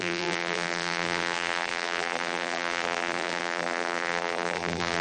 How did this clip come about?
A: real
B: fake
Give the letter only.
B